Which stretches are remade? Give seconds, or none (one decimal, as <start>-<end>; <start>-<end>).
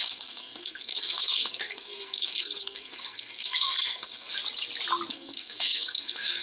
0.0-4.3; 5.1-6.4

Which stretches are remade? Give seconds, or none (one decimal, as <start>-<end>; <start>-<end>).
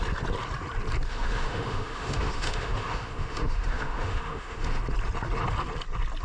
1.1-4.8